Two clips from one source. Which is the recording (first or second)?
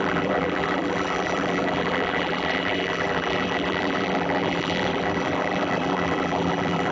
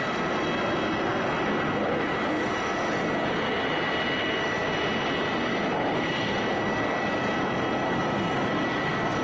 second